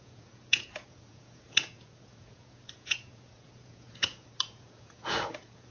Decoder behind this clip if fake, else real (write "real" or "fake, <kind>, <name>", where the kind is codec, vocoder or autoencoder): fake, vocoder, Vocos